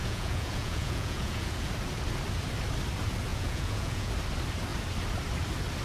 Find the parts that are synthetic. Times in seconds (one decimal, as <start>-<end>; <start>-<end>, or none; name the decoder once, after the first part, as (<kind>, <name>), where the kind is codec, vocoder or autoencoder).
0.0-1.7 (vocoder, Vocos); 3.3-4.1